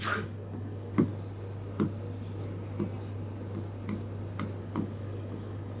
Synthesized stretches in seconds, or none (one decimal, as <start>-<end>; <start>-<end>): 0.0-1.1; 4.6-5.8